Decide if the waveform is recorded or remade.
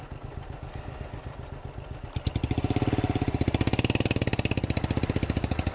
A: recorded